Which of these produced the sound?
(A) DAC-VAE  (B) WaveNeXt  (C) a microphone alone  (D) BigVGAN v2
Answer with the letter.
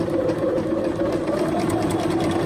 D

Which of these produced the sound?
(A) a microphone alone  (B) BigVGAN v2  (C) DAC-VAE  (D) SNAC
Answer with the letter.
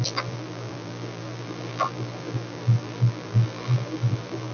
B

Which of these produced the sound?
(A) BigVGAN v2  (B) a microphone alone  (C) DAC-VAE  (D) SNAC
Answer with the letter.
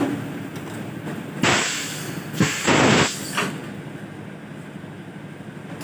B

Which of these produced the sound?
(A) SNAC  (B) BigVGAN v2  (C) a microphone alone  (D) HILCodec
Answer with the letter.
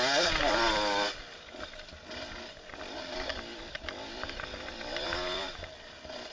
B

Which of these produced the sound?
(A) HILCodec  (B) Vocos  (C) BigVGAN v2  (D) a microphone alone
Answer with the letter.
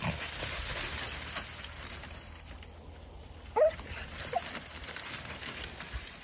D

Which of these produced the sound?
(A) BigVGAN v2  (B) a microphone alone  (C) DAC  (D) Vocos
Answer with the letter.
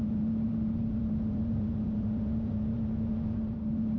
A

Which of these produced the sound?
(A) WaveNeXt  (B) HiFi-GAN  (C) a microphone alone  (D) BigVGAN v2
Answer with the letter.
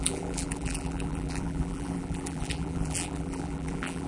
D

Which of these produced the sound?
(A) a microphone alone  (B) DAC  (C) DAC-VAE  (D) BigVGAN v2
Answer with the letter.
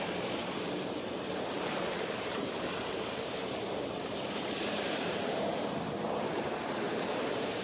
D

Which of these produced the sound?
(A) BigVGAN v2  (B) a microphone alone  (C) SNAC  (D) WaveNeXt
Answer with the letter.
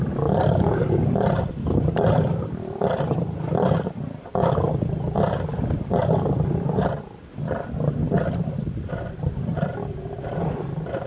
A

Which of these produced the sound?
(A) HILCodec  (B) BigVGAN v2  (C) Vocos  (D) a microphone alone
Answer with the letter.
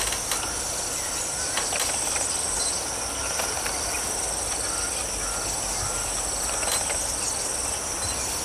D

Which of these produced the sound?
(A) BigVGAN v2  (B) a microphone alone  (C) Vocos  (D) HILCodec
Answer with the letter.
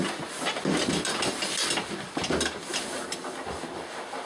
B